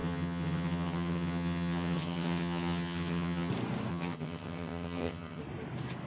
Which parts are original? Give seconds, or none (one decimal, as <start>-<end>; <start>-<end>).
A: 3.5-3.9; 5.4-6.1